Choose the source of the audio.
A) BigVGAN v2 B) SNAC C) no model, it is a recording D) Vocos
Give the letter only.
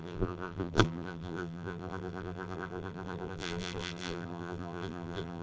A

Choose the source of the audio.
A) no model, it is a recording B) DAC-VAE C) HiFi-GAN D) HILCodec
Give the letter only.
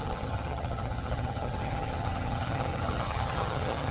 C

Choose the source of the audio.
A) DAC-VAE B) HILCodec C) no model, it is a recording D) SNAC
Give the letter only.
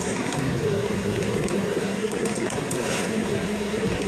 D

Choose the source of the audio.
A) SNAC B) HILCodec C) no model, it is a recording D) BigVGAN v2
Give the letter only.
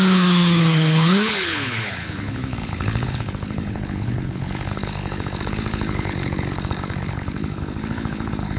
B